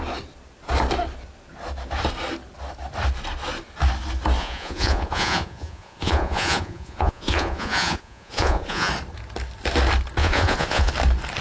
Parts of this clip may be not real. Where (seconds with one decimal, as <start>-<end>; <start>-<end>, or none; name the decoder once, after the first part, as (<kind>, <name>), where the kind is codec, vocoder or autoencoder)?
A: 4.4-8.9 (vocoder, Vocos); 10.2-10.9